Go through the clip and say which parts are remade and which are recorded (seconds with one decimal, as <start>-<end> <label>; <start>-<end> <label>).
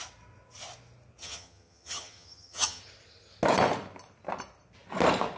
0.0-1.2 recorded; 1.2-2.8 remade; 2.8-5.4 recorded